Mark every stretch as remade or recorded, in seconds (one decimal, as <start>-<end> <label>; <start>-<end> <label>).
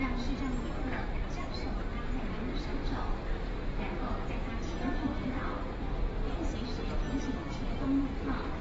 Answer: 0.0-8.6 recorded